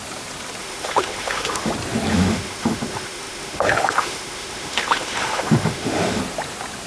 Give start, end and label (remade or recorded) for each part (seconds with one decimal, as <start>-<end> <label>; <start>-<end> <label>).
0.0-0.6 recorded; 0.6-1.7 remade; 1.7-2.1 recorded; 2.1-6.2 remade; 6.2-6.9 recorded